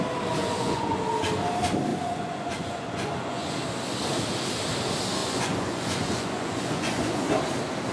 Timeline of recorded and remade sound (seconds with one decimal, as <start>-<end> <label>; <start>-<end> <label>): 0.0-0.4 recorded; 0.4-1.0 remade; 1.0-1.9 recorded; 1.9-3.5 remade; 3.5-5.2 recorded; 5.2-7.3 remade; 7.3-7.9 recorded